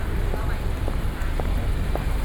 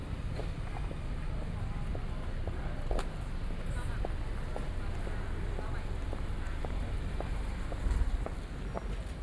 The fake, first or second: first